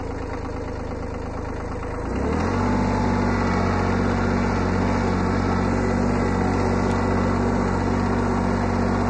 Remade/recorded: recorded